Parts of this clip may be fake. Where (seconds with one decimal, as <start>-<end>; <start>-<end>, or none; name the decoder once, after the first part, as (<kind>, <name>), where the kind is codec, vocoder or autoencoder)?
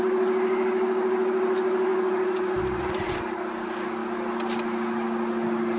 none